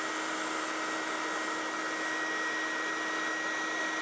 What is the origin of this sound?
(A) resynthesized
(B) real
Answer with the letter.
B